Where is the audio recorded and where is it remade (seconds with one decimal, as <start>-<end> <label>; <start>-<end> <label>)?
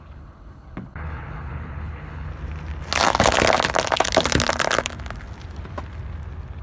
0.0-2.3 remade; 2.3-6.6 recorded